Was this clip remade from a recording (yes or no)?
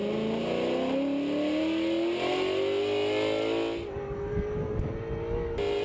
no